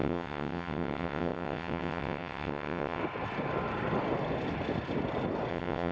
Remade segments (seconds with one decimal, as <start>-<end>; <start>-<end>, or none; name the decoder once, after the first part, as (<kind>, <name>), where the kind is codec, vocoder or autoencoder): 0.0-3.0 (vocoder, WaveNeXt); 5.5-5.9